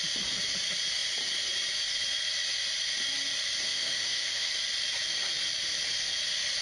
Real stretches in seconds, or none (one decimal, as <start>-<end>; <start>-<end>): 0.0-3.7; 4.5-6.6

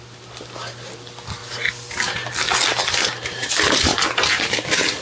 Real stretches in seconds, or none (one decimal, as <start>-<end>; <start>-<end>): 0.0-5.0

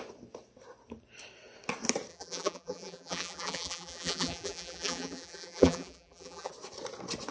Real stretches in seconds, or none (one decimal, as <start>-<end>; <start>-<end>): 0.0-2.1; 6.5-7.3

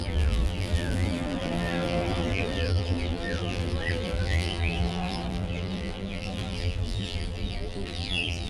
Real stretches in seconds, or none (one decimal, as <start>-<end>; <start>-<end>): none

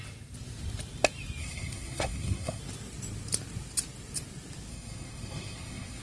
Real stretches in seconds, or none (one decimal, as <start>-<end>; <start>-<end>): 0.0-1.4; 2.6-4.7

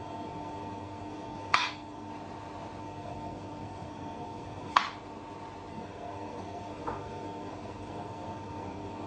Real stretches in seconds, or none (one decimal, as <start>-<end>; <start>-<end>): 2.1-2.8; 4.8-5.7

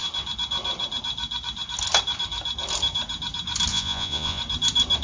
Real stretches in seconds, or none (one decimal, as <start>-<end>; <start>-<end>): 0.0-3.7; 4.4-5.0

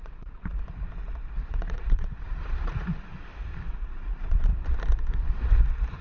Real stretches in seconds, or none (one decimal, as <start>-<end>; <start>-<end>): 0.5-1.5; 3.3-3.8; 4.5-6.0